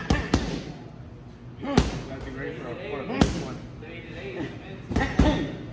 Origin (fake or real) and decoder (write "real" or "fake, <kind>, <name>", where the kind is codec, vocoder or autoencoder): real